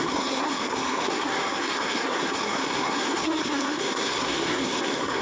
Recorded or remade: remade